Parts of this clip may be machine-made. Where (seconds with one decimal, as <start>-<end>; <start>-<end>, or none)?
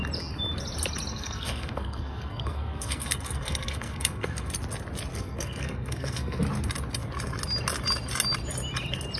1.1-4.5; 5.1-6.4